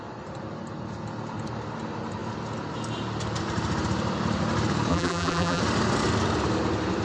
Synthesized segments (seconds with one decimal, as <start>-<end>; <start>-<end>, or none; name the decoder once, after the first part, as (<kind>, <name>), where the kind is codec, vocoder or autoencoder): 4.9-5.6 (vocoder, BigVGAN v2)